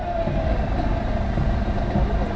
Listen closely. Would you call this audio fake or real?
real